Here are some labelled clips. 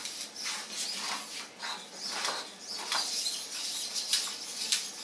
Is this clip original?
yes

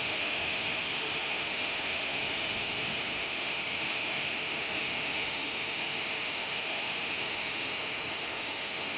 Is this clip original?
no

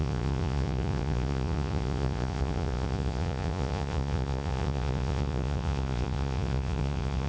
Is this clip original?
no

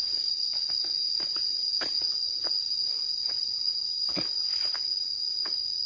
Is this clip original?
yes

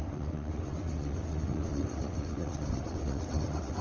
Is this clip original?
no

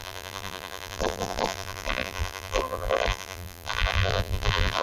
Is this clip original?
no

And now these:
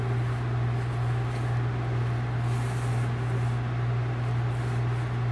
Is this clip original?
yes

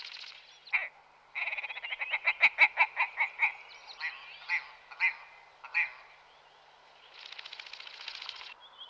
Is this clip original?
yes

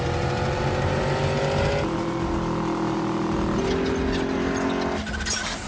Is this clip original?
yes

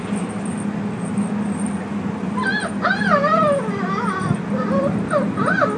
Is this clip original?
yes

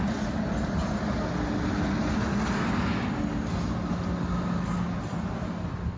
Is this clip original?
yes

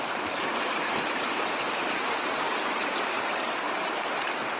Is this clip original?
yes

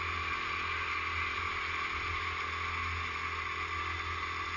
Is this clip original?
yes